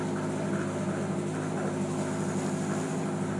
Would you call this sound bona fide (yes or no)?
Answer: yes